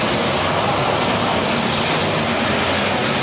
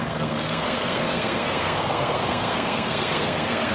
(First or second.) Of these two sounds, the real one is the first